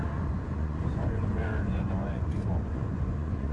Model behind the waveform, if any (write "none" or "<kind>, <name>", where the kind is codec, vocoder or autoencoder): vocoder, Vocos